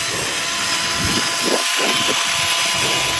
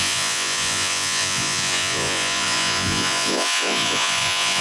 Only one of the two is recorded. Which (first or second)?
first